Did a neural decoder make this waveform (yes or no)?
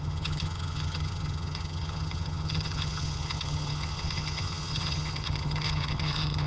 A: yes